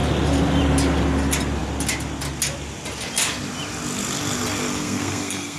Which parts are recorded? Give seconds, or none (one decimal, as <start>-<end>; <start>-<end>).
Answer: 0.0-4.8

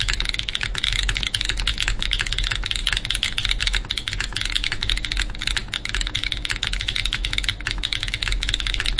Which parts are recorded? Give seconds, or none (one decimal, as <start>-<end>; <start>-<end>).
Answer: 2.8-3.6

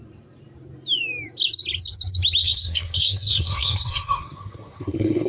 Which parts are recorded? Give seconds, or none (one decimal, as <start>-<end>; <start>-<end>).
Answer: 0.0-2.4